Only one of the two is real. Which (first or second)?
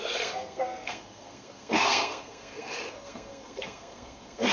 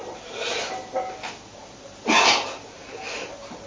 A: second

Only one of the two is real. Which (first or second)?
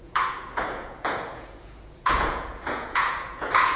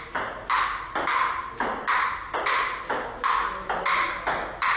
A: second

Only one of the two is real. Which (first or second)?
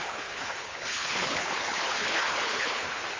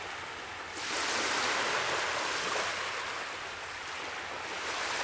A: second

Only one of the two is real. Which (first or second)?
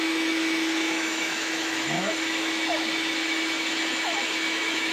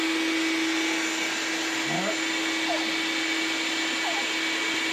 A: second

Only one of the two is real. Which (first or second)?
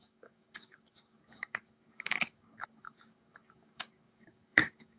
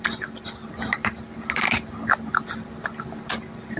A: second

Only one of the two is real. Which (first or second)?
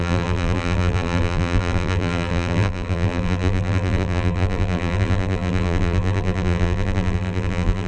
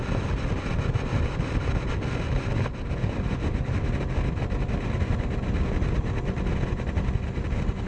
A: second